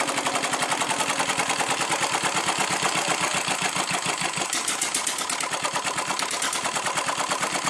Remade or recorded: recorded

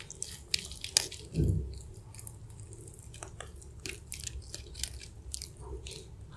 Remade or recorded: recorded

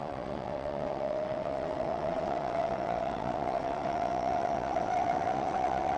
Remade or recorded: remade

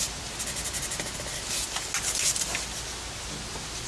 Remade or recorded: recorded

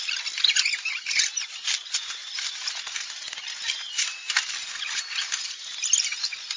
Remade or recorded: recorded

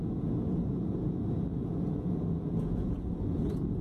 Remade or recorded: remade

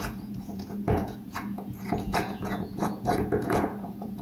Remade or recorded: remade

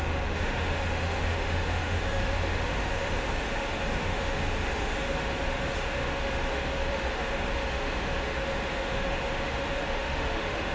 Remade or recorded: remade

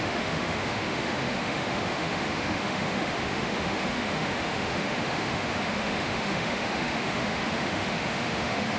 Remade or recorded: remade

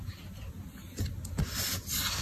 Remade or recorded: recorded